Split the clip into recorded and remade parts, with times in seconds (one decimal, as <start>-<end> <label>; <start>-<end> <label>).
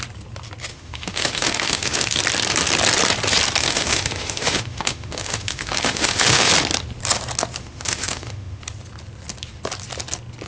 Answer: 0.0-0.7 recorded; 0.7-2.2 remade; 2.2-3.6 recorded; 3.6-6.5 remade; 6.5-7.6 recorded; 7.6-8.6 remade; 8.6-10.5 recorded